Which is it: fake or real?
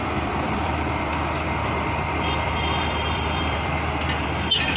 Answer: fake